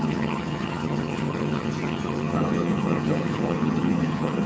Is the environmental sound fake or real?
fake